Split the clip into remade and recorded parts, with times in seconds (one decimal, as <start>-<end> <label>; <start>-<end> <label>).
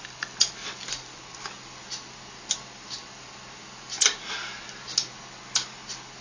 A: 0.0-6.2 recorded